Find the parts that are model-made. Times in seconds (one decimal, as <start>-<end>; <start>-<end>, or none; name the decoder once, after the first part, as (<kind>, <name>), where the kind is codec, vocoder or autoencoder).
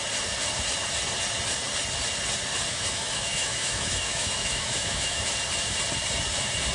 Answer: 2.7-5.3 (autoencoder, DAC-VAE)